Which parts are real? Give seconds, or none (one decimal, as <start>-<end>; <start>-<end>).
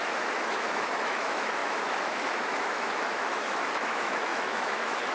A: none